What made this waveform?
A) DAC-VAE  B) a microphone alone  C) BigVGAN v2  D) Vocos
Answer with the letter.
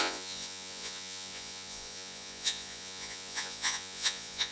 D